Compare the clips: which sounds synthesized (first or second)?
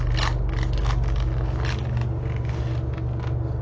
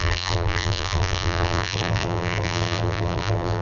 second